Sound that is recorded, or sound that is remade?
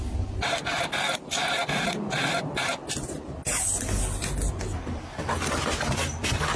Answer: recorded